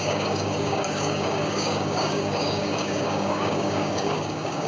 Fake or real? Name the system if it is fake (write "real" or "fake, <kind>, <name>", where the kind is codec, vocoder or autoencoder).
fake, codec, DAC